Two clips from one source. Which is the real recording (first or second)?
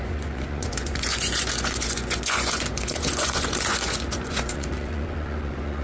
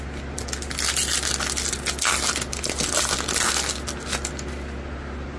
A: second